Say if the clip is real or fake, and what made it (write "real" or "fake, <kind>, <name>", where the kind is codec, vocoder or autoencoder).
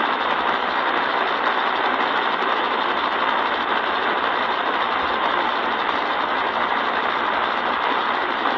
real